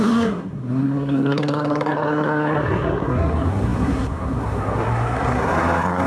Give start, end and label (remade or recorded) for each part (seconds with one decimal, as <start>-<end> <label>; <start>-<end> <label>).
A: 0.0-6.1 remade